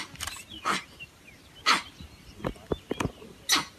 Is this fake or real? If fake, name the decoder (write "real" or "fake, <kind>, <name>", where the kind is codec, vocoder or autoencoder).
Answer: real